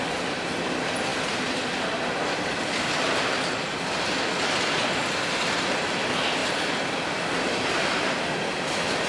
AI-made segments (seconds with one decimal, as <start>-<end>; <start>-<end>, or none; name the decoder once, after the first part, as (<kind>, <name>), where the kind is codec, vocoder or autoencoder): none